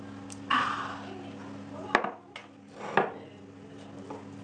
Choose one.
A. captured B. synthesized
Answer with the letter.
A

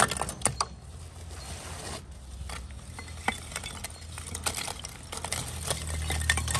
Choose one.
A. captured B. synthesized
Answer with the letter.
A